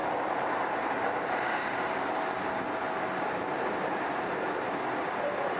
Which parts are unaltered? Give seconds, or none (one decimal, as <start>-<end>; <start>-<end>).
2.1-5.6